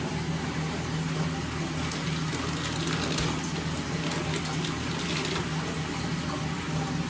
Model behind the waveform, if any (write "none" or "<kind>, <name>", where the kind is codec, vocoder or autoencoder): none